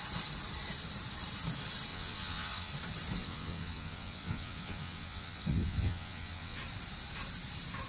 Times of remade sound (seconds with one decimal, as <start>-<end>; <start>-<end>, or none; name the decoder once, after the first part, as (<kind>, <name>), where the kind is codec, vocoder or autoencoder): 1.9-2.7 (vocoder, WaveNeXt); 3.2-6.6

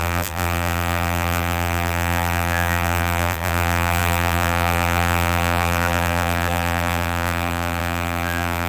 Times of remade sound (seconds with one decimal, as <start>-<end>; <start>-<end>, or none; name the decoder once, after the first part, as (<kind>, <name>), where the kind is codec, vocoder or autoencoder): 0.0-8.7 (vocoder, BigVGAN v2)

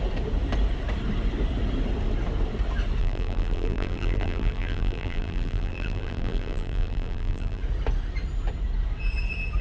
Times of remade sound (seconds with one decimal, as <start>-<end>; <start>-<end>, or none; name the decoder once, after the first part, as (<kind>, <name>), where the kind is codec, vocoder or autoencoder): 3.0-7.6 (vocoder, BigVGAN v2)

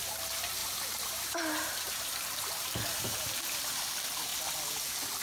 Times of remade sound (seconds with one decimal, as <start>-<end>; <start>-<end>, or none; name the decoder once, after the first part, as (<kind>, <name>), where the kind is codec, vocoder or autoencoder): 0.6-3.7 (vocoder, BigVGAN v2)